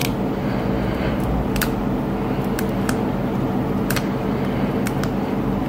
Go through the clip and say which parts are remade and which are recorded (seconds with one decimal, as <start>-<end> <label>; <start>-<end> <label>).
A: 0.0-5.7 recorded